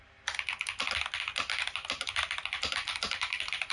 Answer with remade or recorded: recorded